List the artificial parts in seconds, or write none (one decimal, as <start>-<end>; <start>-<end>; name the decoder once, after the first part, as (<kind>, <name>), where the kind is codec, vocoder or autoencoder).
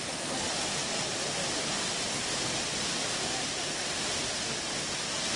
none